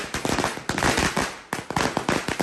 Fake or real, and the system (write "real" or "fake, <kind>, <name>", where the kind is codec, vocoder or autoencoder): real